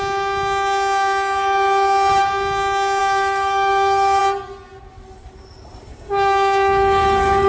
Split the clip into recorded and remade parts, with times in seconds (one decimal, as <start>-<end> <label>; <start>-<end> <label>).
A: 0.0-3.0 recorded; 3.0-4.2 remade; 4.2-5.9 recorded; 5.9-7.5 remade